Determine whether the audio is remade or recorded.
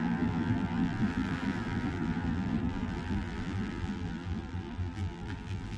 remade